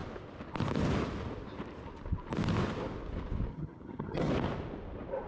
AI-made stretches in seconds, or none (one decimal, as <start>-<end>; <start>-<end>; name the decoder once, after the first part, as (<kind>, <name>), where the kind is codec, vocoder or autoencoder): 3.5-4.3 (vocoder, HiFi-GAN)